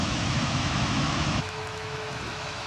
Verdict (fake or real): fake